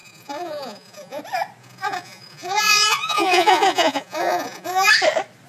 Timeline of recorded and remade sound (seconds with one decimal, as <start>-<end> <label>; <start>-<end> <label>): 0.0-1.2 remade; 1.2-1.6 recorded; 1.6-4.9 remade; 4.9-5.5 recorded